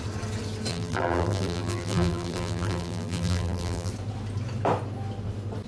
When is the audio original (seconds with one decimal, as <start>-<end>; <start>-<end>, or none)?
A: 0.0-0.7; 3.9-5.7